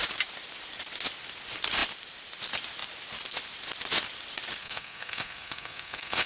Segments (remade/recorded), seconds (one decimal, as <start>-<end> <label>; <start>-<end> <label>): 0.0-4.6 recorded; 4.6-6.3 remade